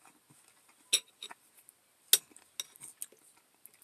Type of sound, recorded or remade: recorded